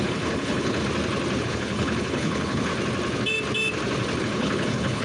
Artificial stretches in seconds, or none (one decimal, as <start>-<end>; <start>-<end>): 0.0-0.8; 1.4-2.7; 4.2-5.0